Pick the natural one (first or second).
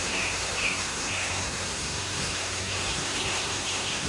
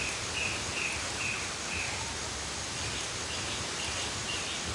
second